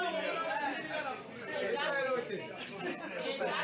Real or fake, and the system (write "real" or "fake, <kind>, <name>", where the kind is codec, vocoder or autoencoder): real